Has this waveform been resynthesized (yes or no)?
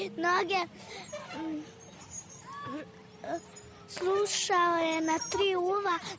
no